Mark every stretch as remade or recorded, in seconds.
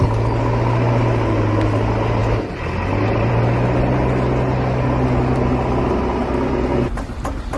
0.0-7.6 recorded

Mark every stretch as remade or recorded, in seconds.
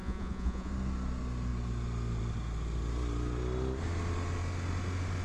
0.0-0.7 remade; 0.7-5.2 recorded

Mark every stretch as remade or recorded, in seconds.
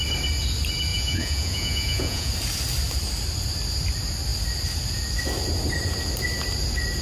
0.0-0.9 recorded; 0.9-2.3 remade; 2.3-7.0 recorded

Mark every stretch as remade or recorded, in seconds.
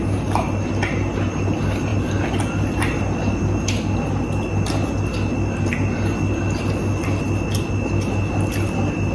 0.0-9.1 recorded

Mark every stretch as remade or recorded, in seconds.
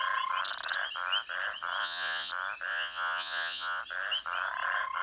0.0-1.8 recorded; 1.8-2.3 remade; 2.3-2.7 recorded; 2.7-3.8 remade; 3.8-5.0 recorded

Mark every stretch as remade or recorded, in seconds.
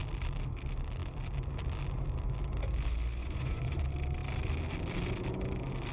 0.0-3.2 recorded; 3.2-3.8 remade; 3.8-5.9 recorded